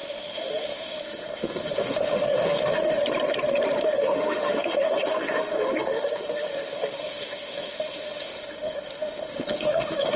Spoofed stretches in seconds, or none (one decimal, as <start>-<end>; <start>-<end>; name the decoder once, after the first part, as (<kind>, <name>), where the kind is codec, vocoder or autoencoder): 0.0-3.0 (autoencoder, DAC-VAE); 3.8-10.2